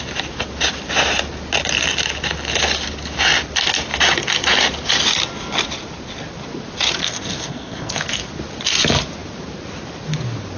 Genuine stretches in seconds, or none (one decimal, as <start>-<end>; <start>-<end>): 0.0-7.0; 8.2-10.6